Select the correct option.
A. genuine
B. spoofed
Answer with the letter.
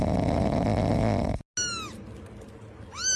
A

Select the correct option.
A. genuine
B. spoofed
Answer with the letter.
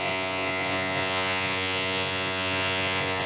B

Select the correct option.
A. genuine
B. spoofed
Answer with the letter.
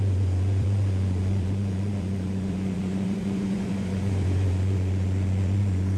B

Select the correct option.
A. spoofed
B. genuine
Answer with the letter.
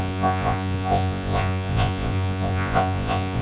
A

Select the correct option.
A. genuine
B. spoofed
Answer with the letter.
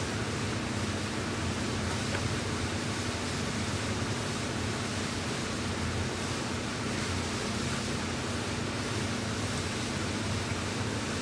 A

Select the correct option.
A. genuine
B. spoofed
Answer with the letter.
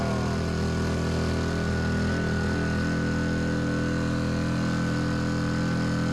A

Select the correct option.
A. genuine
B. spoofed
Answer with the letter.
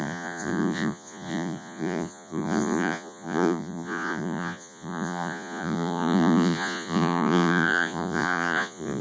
B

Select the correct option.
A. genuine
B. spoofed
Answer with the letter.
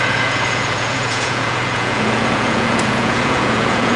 B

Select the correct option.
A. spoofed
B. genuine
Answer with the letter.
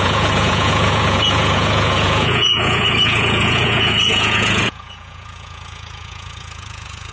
A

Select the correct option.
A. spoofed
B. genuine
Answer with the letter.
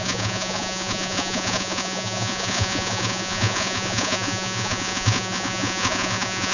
A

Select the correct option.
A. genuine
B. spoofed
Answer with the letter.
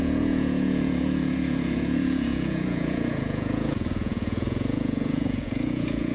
B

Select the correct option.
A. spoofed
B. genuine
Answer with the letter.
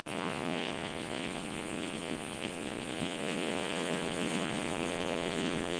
A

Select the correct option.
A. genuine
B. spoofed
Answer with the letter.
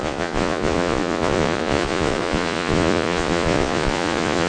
B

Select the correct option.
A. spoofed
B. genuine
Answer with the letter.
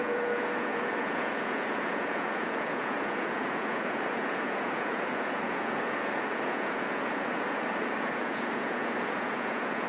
A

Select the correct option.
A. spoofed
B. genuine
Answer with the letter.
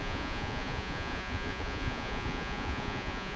A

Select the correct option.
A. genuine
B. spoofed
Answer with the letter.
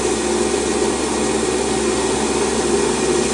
A